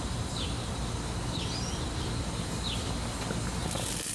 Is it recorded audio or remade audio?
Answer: recorded